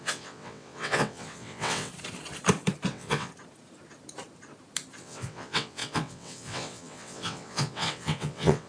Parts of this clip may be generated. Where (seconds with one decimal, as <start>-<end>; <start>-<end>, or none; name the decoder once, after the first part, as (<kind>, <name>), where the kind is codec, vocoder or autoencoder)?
0.0-1.9 (vocoder, WaveNeXt); 2.9-3.3; 5.0-8.7